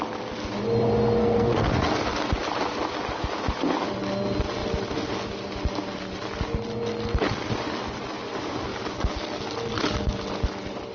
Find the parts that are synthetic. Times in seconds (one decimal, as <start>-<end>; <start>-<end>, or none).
1.2-1.8